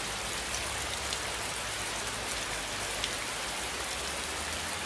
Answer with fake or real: real